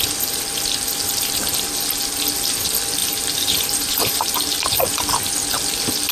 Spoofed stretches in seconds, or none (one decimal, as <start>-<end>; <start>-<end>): 3.0-4.9

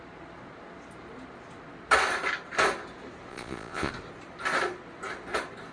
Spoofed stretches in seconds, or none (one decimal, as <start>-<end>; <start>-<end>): 3.3-3.9